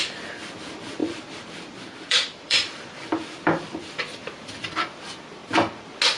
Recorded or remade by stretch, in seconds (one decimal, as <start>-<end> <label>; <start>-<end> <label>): 0.0-1.0 recorded; 1.0-4.7 remade; 4.7-6.2 recorded